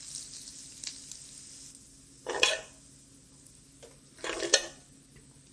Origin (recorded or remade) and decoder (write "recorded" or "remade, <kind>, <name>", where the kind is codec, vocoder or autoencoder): recorded